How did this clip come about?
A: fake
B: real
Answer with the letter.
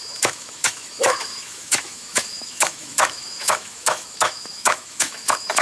A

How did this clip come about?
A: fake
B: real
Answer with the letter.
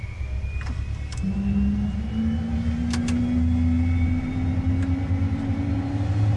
B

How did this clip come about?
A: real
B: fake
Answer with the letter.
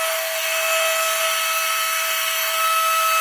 B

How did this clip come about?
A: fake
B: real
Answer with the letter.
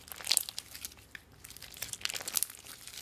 B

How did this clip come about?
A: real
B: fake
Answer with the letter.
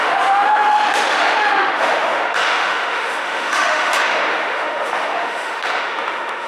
B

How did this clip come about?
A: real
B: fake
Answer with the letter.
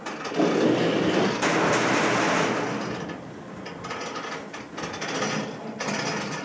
A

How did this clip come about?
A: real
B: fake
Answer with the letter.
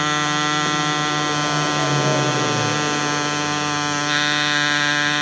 A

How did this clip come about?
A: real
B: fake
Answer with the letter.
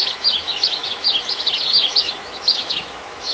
B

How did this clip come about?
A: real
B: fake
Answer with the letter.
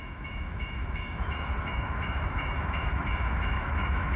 B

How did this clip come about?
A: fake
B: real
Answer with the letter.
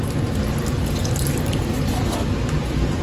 B